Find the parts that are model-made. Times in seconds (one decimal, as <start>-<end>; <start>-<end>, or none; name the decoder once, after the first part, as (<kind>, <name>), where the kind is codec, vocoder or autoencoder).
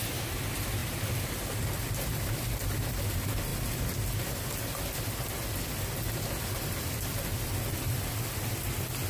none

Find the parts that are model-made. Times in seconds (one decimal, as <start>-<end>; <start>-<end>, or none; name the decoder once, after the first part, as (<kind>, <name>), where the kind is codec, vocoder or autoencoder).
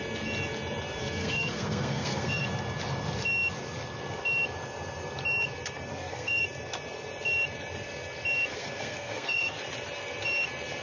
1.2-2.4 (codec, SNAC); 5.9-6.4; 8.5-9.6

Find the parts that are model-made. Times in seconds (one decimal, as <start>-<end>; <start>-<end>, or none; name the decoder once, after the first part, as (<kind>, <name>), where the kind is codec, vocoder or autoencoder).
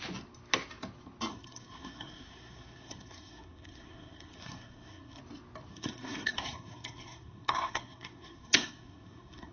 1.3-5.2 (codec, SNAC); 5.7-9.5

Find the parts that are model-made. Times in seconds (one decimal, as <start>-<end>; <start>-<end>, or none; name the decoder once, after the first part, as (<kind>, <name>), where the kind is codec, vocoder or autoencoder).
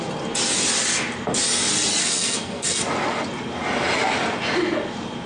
2.0-2.8 (codec, SNAC)